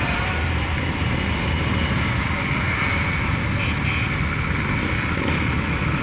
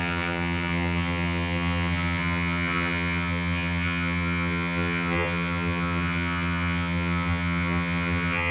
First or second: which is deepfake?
second